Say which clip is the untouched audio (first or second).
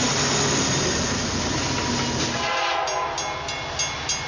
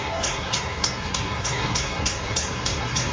first